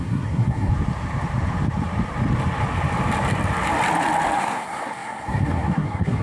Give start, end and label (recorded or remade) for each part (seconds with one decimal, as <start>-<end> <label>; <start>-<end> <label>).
0.0-0.7 remade; 0.7-4.4 recorded; 4.4-6.2 remade